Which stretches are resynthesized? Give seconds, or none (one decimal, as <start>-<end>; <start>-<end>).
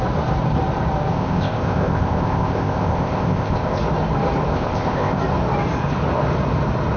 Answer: 1.1-3.8; 4.5-5.2